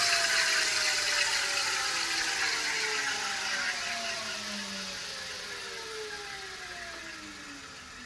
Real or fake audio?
real